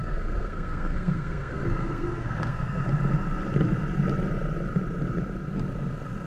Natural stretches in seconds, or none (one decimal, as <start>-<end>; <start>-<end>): 2.8-6.3